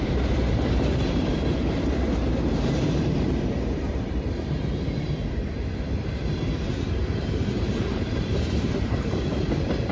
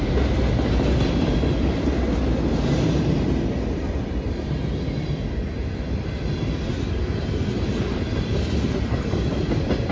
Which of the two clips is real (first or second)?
second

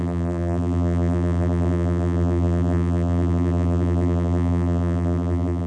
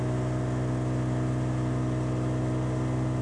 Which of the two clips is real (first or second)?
second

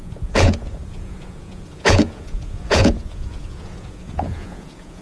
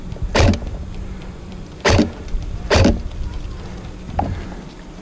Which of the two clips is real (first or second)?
second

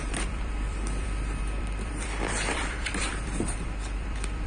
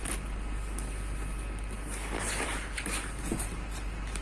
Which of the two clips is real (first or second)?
second